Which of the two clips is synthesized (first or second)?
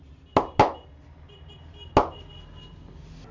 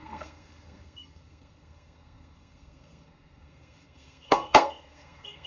second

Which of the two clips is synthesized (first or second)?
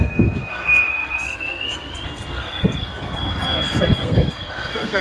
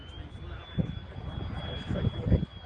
first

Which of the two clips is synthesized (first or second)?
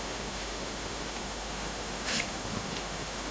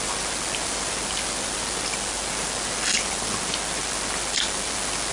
first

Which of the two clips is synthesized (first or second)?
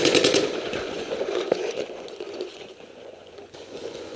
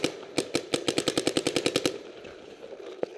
first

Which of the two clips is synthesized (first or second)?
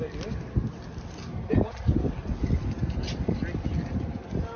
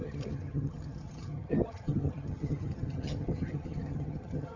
second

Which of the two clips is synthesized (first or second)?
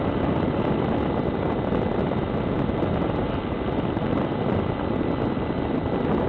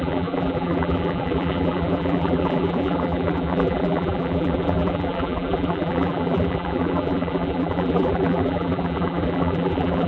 second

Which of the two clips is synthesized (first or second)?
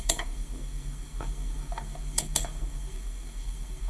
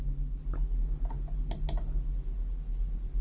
first